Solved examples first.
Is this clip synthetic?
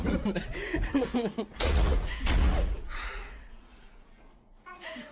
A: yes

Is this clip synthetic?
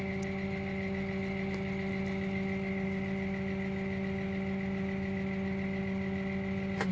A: no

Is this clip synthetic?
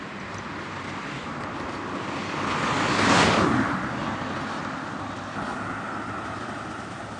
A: no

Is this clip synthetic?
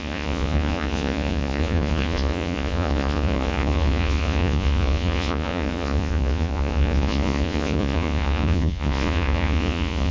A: yes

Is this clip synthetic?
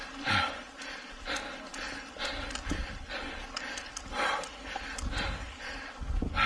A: no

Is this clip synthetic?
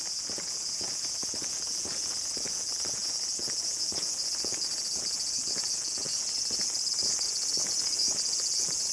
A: yes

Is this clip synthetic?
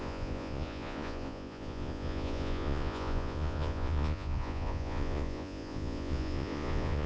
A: yes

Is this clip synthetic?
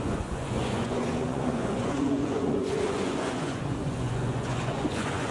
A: yes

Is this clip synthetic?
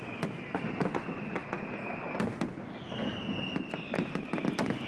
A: no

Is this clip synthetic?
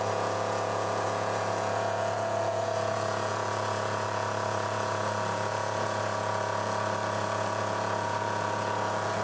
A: yes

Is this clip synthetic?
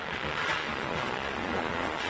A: yes